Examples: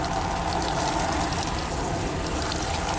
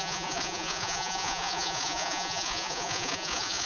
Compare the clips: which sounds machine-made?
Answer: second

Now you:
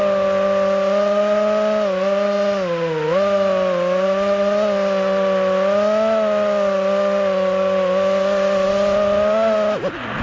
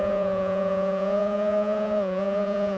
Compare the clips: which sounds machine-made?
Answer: second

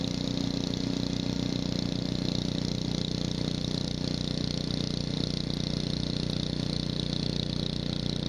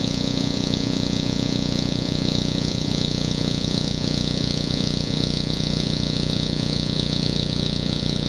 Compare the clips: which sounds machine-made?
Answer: second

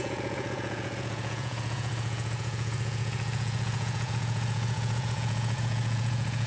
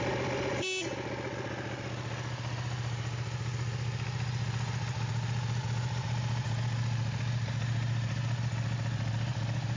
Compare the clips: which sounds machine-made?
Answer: first